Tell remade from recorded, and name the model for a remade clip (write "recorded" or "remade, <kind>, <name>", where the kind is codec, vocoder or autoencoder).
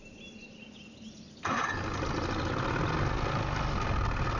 recorded